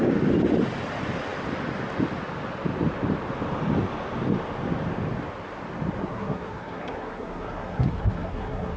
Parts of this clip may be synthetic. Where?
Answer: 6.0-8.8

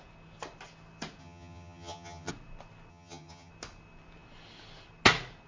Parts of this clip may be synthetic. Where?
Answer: 1.2-2.3; 2.9-3.5